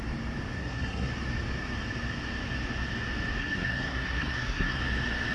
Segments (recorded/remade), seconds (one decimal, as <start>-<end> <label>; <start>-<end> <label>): 0.0-0.6 recorded; 0.6-1.1 remade; 1.1-3.4 recorded; 3.4-4.8 remade; 4.8-5.3 recorded